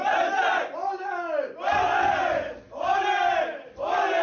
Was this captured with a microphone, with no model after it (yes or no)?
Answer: yes